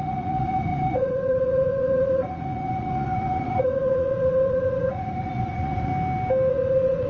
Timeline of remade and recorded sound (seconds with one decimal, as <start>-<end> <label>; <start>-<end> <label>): 0.0-5.9 remade; 5.9-6.5 recorded; 6.5-7.1 remade